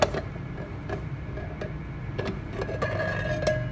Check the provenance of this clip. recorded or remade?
recorded